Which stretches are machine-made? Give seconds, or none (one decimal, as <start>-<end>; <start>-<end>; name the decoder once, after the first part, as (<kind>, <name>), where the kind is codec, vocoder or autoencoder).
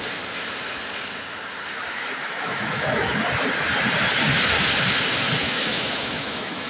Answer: 2.2-3.1 (autoencoder, DAC-VAE); 5.4-6.7